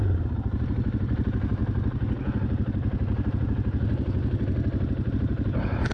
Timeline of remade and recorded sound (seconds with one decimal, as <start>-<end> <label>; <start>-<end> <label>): 0.0-1.6 remade; 1.6-5.1 recorded; 5.1-5.9 remade